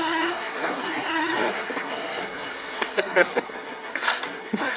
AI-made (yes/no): yes